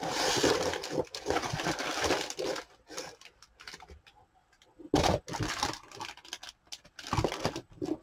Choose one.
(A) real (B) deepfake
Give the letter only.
A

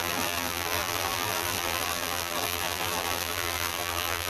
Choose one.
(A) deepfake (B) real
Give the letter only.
A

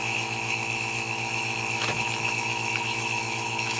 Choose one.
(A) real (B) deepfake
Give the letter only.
B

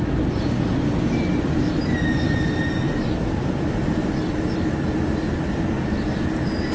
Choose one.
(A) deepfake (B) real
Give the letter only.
B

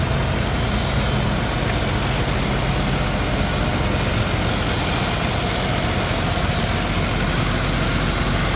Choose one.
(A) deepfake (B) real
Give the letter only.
B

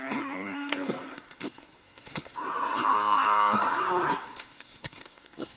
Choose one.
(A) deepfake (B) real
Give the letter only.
A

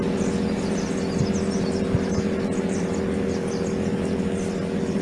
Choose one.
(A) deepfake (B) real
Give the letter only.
B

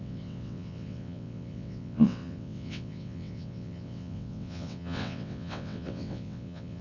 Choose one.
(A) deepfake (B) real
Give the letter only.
A